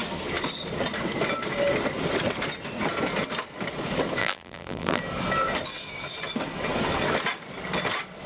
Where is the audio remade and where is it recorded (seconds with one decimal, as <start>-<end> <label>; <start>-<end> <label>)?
0.0-4.2 recorded; 4.2-5.0 remade; 5.0-8.3 recorded